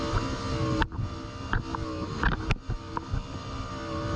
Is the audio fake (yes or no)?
no